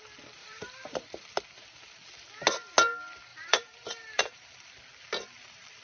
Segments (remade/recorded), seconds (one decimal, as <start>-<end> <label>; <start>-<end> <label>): 0.0-0.4 recorded; 0.4-1.0 remade; 1.0-3.3 recorded; 3.3-4.5 remade; 4.5-5.8 recorded